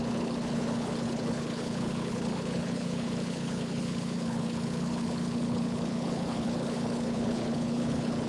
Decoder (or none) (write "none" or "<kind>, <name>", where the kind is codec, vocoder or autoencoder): codec, HILCodec